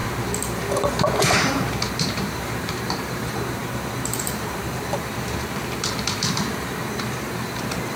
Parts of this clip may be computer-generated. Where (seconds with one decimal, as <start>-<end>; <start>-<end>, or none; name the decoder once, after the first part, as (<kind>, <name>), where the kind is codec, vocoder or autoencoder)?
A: 1.2-3.6 (vocoder, BigVGAN v2); 4.2-8.0